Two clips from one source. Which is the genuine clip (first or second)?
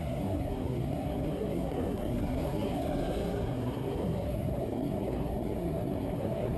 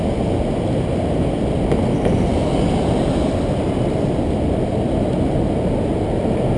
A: second